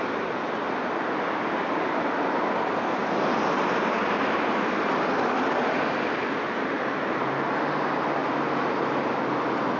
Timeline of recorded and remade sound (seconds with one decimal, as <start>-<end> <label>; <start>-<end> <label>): 0.0-9.8 recorded

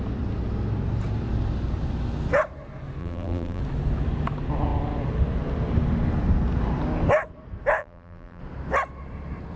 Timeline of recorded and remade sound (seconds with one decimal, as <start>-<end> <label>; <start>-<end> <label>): 0.0-3.0 recorded; 3.0-3.6 remade; 3.6-7.8 recorded; 7.8-8.4 remade; 8.4-9.6 recorded

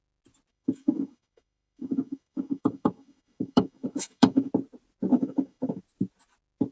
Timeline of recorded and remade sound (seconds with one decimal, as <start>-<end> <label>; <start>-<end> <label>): 0.0-0.5 recorded; 0.5-4.5 remade; 4.5-5.1 recorded; 5.1-5.8 remade; 5.8-6.7 recorded

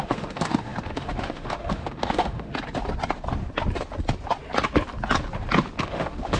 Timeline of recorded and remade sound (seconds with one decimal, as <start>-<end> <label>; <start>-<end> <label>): 0.0-2.5 remade; 2.5-5.8 recorded; 5.8-6.4 remade

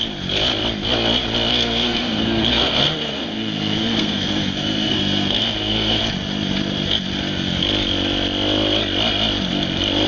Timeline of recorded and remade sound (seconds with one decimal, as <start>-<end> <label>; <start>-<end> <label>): 0.0-1.5 recorded; 1.5-6.0 remade; 6.0-10.1 recorded